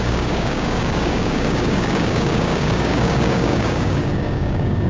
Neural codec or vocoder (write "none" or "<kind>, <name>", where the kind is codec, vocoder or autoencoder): codec, DAC